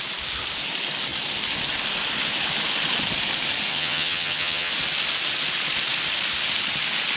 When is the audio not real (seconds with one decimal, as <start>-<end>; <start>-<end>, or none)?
3.7-4.7